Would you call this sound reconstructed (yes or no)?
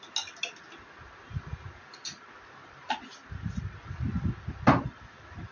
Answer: no